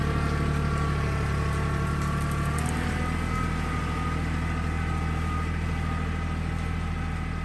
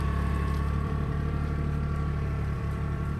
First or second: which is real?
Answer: first